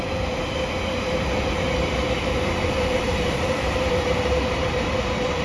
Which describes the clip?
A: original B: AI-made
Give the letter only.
A